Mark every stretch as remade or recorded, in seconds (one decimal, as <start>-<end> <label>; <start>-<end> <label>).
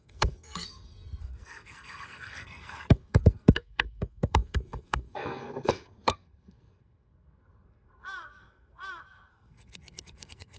0.0-10.6 remade